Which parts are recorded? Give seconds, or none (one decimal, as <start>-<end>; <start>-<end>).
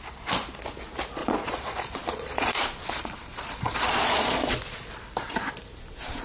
0.0-1.2; 4.9-6.2